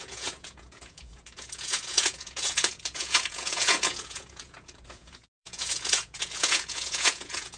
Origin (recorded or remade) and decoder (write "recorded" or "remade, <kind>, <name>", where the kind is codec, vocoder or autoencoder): remade, vocoder, Vocos